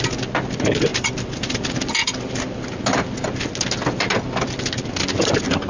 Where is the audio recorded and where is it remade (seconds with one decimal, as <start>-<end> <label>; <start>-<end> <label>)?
0.0-0.9 recorded; 0.9-1.6 remade; 1.6-5.7 recorded